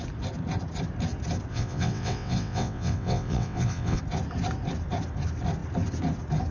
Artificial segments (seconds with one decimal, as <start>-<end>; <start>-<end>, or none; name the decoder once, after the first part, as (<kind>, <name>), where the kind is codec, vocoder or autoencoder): 1.5-4.0 (vocoder, WaveNeXt)